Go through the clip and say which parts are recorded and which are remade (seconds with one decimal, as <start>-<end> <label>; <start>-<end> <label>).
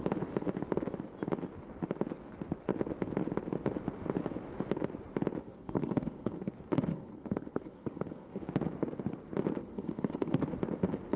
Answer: 0.0-5.4 recorded; 5.4-6.5 remade; 6.5-6.9 recorded; 6.9-8.4 remade; 8.4-9.6 recorded; 9.6-10.4 remade; 10.4-11.2 recorded